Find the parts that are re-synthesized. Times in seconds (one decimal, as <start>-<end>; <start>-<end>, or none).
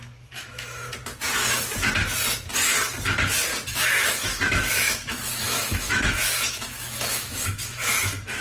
0.0-0.9; 3.7-8.4